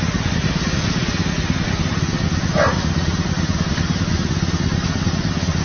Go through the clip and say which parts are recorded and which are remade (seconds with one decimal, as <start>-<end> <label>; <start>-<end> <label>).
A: 0.0-5.6 recorded